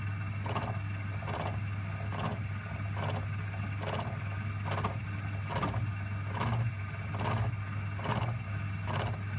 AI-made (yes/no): no